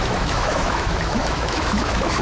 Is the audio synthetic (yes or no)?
yes